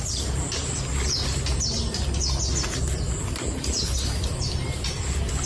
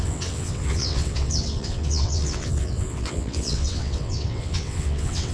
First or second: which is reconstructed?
second